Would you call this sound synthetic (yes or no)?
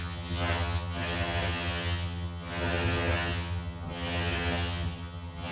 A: yes